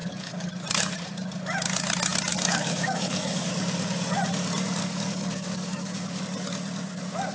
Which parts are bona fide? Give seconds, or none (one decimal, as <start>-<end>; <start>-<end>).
0.5-2.3; 3.5-4.8; 6.2-7.3